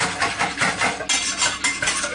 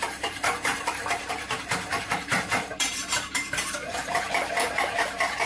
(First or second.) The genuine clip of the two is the first